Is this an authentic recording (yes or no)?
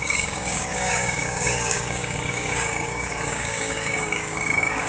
no